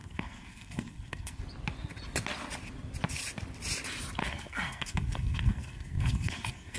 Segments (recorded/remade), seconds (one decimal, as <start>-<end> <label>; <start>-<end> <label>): 0.0-1.4 remade; 1.4-4.2 recorded; 4.2-6.8 remade